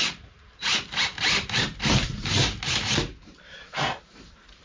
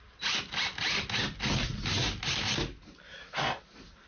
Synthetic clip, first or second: first